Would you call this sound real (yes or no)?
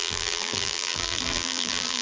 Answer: no